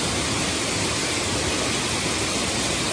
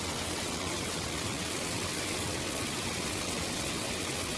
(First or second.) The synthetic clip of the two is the second